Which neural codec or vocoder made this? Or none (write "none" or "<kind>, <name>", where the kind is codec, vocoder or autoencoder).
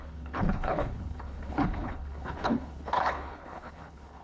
codec, HILCodec